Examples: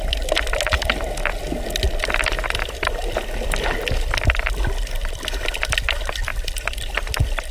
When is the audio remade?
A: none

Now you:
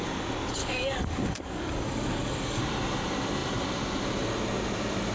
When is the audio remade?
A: 0.6-2.6

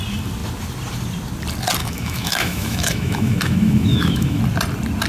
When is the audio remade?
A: 1.8-4.4